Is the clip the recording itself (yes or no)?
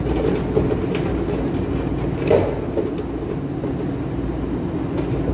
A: yes